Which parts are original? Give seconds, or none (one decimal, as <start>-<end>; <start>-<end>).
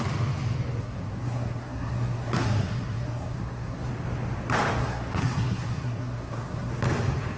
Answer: 0.0-0.8; 3.9-4.8; 6.7-7.4